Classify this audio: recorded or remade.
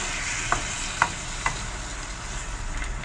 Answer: recorded